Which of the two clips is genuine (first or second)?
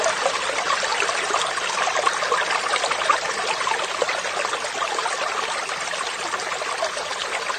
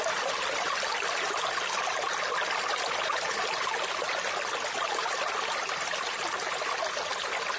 second